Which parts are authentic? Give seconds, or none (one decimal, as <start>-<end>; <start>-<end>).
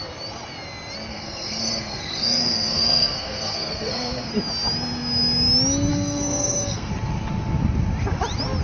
0.0-1.1; 4.3-5.9; 6.9-8.6